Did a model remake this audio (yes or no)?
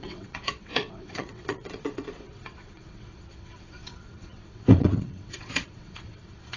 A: yes